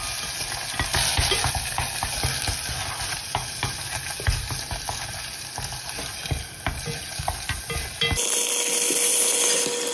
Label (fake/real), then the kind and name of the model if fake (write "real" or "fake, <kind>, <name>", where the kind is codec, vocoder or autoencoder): real